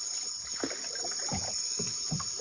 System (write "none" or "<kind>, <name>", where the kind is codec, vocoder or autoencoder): none